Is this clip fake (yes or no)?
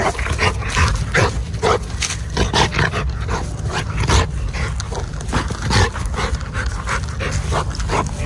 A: no